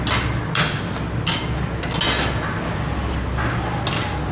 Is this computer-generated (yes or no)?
no